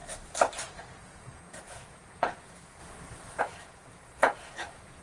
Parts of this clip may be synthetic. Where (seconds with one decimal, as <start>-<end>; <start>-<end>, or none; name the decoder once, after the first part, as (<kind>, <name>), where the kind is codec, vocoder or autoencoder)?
0.9-2.8 (vocoder, Vocos); 3.4-5.0